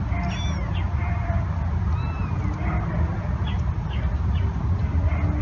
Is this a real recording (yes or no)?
yes